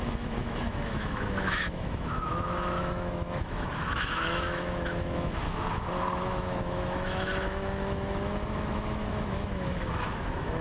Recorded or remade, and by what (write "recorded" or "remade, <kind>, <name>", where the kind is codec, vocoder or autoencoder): remade, autoencoder, DAC-VAE